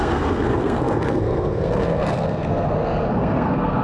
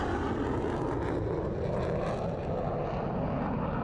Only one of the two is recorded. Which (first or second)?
second